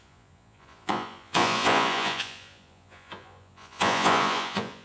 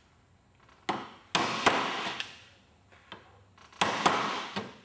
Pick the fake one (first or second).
first